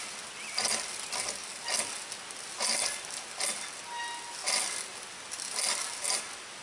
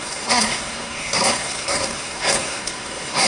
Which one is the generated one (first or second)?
second